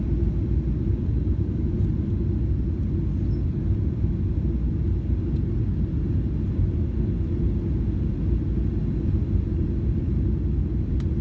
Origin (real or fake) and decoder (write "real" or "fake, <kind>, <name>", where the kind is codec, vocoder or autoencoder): real